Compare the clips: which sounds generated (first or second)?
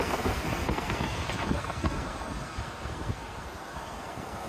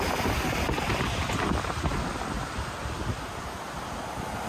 first